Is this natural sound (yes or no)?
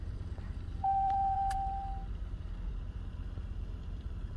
no